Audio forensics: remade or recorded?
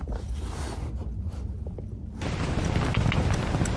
recorded